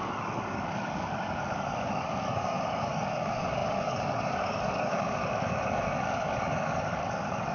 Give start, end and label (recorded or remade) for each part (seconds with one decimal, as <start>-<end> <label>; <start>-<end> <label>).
0.0-7.5 remade